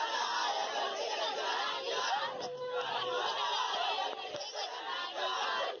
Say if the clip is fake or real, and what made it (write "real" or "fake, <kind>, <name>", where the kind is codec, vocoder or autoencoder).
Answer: real